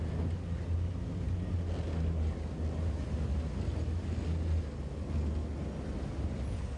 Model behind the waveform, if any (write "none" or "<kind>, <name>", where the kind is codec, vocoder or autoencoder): none